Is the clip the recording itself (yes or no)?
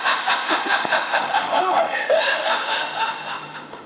no